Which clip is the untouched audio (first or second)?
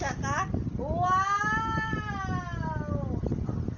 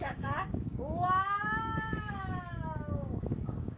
first